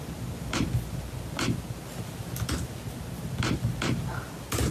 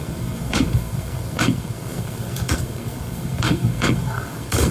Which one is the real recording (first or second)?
first